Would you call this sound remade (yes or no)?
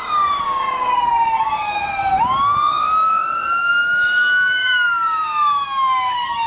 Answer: yes